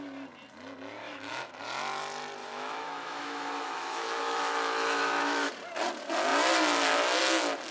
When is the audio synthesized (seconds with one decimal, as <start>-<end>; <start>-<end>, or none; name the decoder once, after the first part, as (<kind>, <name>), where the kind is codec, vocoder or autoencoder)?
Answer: 1.0-1.5 (autoencoder, DAC-VAE); 2.4-5.5